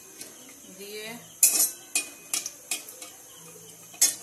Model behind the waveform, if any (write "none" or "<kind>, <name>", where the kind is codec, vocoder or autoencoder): none